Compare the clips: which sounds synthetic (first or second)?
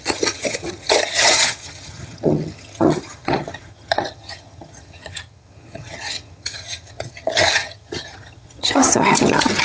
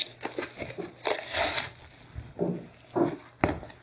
first